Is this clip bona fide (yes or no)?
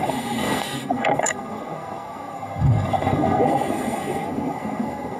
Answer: no